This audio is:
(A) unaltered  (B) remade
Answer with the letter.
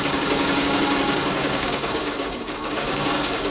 B